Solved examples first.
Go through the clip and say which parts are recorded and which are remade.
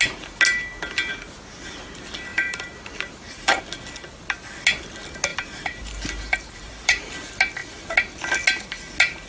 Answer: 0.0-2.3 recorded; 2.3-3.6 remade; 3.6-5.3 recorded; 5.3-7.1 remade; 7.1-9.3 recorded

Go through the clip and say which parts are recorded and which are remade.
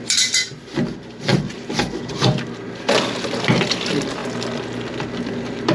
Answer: 0.0-5.7 recorded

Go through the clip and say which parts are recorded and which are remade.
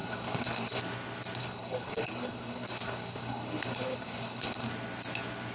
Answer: 0.0-0.8 remade; 0.8-1.4 recorded; 1.4-4.7 remade; 4.7-5.5 recorded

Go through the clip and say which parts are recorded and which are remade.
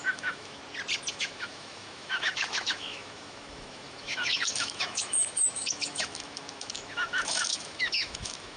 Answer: 0.0-0.6 remade; 0.6-1.1 recorded; 1.1-8.6 remade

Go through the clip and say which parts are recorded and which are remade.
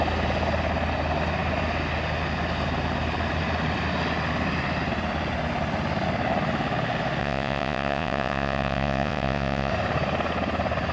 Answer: 0.0-7.2 recorded; 7.2-9.7 remade; 9.7-10.9 recorded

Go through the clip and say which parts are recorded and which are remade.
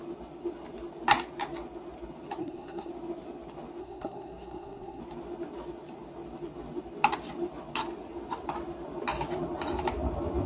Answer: 0.0-2.4 recorded; 2.4-2.9 remade; 2.9-3.8 recorded; 3.8-5.0 remade; 5.0-10.5 recorded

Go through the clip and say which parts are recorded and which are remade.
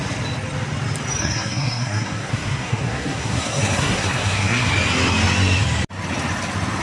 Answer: 0.0-1.2 recorded; 1.2-4.7 remade; 4.7-6.8 recorded